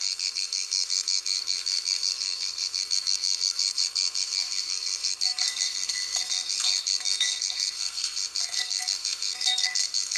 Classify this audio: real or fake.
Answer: fake